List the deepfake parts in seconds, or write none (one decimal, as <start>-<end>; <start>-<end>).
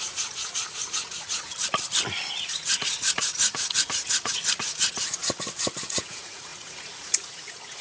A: 0.0-1.5; 2.3-5.2; 5.8-7.8